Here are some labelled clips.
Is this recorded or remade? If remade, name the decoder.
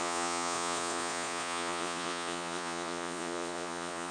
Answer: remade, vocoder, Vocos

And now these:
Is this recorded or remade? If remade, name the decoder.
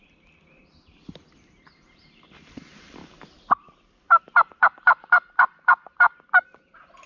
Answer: remade, vocoder, BigVGAN v2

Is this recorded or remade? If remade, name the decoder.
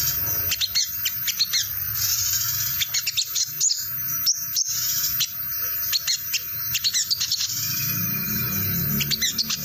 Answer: recorded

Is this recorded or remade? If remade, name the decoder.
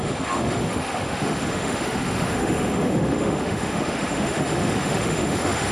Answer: remade, autoencoder, DAC-VAE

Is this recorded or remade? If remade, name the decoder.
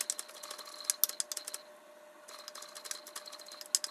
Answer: recorded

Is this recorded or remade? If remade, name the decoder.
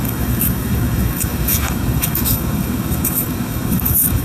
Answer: remade, codec, DAC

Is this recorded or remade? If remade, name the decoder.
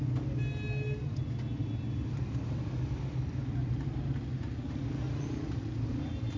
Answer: recorded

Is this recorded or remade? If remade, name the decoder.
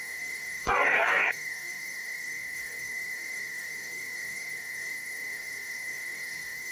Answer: remade, codec, DAC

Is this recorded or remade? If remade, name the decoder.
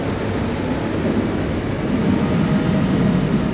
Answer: recorded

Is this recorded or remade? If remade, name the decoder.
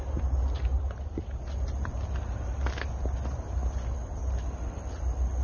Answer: recorded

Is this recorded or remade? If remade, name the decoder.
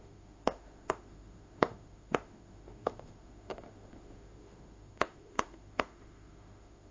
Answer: remade, autoencoder, DAC-VAE